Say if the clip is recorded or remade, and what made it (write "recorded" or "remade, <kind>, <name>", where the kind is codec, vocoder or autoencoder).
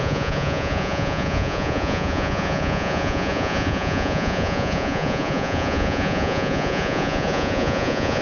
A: remade, vocoder, Vocos